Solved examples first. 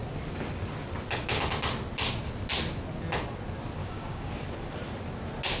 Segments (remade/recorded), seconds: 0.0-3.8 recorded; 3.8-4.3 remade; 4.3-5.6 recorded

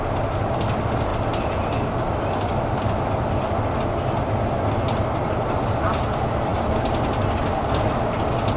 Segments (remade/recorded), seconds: 0.0-8.6 recorded

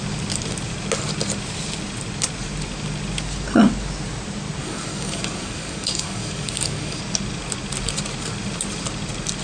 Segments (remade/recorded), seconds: 0.0-4.6 recorded; 4.6-7.0 remade; 7.0-9.4 recorded

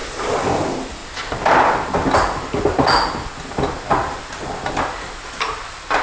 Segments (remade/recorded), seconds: 0.0-6.0 recorded

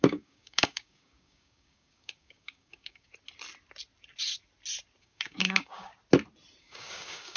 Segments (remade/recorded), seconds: 0.0-3.1 remade; 3.1-5.0 recorded; 5.0-5.9 remade; 5.9-6.6 recorded; 6.6-7.4 remade